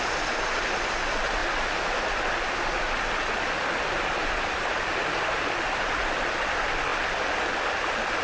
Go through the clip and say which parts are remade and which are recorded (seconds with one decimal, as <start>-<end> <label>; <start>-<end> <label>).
0.0-8.2 recorded